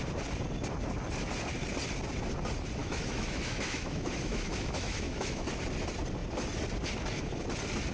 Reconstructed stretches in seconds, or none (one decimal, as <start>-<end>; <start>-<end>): 2.8-5.5

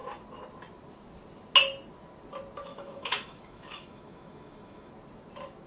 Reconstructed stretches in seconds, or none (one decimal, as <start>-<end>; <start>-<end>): 2.7-4.9

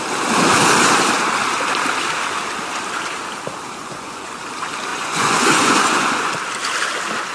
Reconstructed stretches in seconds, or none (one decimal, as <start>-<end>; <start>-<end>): 3.8-4.4; 4.9-6.3

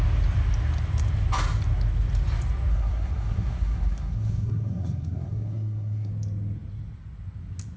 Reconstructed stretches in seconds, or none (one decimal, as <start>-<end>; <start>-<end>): 2.7-6.1

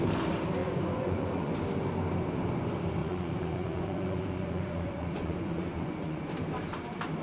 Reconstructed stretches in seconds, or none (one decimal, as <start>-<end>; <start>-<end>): 0.6-1.5; 3.0-6.3

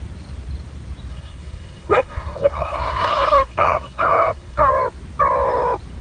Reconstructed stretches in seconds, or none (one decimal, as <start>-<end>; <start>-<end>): 1.1-4.7

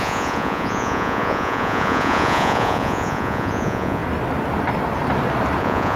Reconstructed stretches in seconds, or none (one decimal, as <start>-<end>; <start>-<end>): 0.0-4.0; 5.6-6.0